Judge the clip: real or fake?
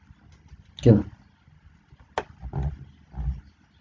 real